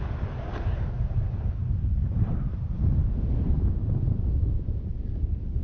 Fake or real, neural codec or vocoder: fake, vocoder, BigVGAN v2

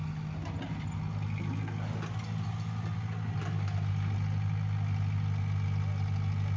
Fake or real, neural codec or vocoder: real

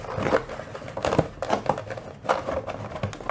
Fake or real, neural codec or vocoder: real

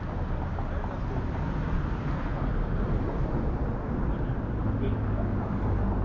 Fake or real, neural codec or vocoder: real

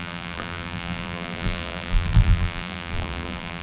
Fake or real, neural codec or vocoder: fake, vocoder, BigVGAN v2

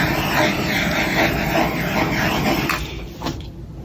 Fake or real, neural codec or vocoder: real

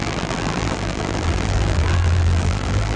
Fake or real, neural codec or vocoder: fake, vocoder, BigVGAN v2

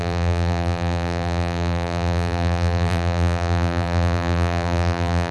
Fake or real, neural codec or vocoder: fake, vocoder, BigVGAN v2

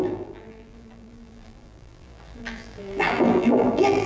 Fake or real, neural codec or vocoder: fake, vocoder, BigVGAN v2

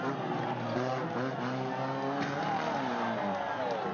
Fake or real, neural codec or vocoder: real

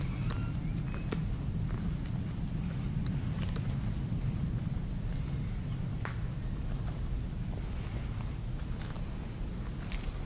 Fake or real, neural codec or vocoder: real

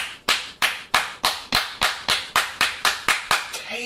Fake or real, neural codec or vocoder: fake, vocoder, BigVGAN v2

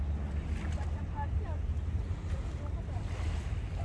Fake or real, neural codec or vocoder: real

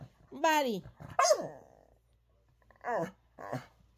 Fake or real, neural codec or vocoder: real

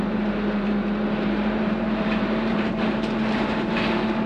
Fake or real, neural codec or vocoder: fake, vocoder, BigVGAN v2